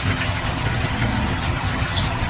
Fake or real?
fake